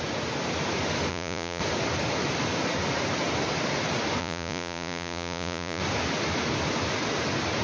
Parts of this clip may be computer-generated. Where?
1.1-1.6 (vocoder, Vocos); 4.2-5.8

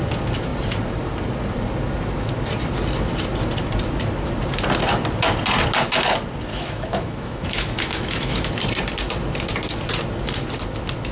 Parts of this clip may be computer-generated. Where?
6.5-8.5 (autoencoder, DAC-VAE)

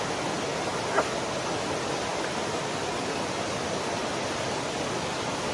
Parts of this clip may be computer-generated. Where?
none

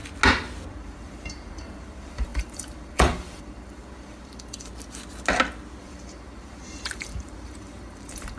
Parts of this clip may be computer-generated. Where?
0.7-4.7 (vocoder, BigVGAN v2); 5.8-8.4

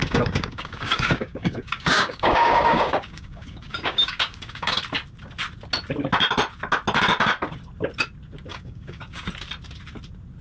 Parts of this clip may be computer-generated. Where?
0.0-4.8 (codec, DAC); 8.5-9.3

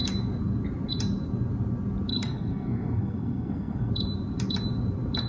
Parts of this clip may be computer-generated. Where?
2.1-3.9 (codec, SNAC)